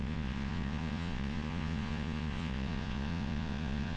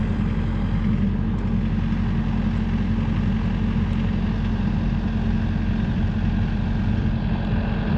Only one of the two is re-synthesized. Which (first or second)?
first